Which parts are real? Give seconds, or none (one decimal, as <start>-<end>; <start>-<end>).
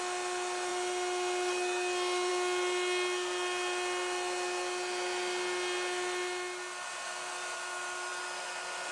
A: 0.0-8.9